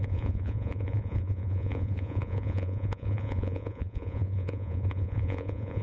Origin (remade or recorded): remade